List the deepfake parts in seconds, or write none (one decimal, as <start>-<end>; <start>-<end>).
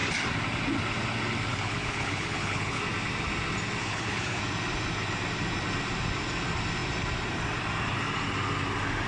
1.5-2.8; 3.8-4.4